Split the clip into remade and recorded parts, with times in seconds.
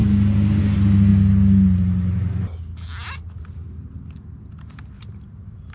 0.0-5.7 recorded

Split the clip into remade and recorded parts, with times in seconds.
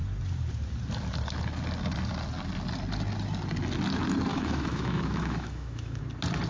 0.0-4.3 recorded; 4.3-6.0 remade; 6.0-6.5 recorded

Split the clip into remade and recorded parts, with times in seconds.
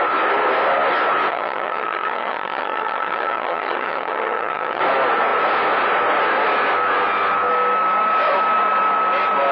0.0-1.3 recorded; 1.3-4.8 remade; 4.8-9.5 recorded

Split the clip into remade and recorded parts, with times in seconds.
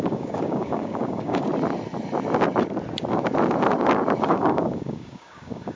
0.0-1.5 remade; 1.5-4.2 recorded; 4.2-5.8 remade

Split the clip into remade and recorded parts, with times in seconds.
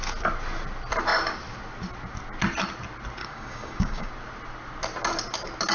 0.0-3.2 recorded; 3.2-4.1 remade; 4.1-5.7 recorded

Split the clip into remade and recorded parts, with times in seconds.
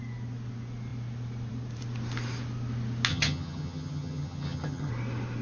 0.0-3.1 recorded; 3.1-4.9 remade; 4.9-5.4 recorded